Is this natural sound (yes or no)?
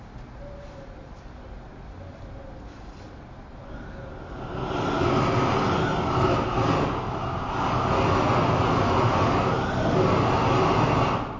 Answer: yes